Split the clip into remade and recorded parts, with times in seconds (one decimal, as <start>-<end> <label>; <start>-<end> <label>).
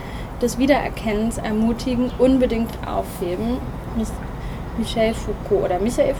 0.0-2.7 recorded; 2.7-3.6 remade; 3.6-6.2 recorded